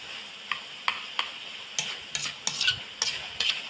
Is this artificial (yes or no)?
no